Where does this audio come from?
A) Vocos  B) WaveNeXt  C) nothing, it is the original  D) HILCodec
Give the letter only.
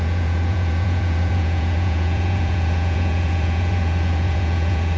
A